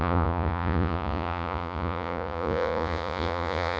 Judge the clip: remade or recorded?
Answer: remade